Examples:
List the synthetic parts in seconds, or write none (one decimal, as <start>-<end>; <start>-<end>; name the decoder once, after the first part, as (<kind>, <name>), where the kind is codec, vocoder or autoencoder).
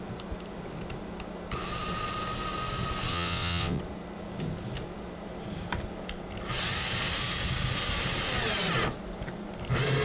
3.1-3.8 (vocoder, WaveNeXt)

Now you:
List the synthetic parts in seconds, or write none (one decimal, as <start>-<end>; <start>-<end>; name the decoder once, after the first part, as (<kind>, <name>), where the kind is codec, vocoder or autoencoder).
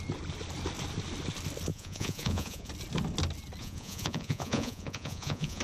1.7-2.7 (vocoder, Vocos); 3.6-5.6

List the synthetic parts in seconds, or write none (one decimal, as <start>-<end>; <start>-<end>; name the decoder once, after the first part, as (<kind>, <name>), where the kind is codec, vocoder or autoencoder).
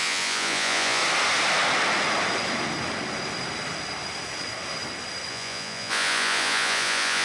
0.0-1.0 (vocoder, Vocos); 5.3-7.2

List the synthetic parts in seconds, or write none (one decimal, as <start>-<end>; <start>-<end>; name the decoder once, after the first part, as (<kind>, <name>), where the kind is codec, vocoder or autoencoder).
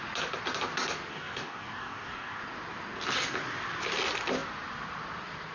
1.1-2.4 (codec, DAC)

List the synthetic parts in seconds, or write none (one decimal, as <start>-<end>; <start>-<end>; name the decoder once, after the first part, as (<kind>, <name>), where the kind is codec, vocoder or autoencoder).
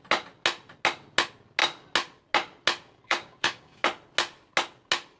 3.0-3.8 (codec, DAC)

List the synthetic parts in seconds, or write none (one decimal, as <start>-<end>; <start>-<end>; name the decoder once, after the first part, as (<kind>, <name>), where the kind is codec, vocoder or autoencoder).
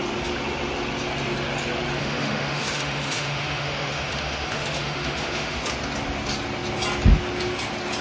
2.0-5.7 (autoencoder, DAC-VAE)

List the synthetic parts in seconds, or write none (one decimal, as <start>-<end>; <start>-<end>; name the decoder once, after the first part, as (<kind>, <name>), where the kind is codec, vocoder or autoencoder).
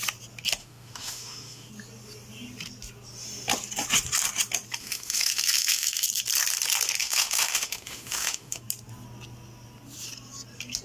0.6-1.7 (autoencoder, DAC-VAE); 4.8-6.1; 7.0-8.6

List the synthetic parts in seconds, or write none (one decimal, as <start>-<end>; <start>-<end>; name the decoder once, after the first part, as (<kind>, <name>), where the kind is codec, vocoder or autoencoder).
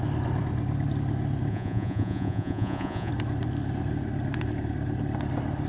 1.5-3.1 (vocoder, Vocos)